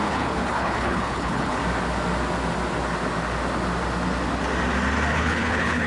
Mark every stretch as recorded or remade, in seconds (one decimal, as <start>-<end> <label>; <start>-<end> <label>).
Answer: 0.0-1.6 remade; 1.6-5.1 recorded; 5.1-5.9 remade